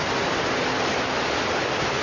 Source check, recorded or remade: recorded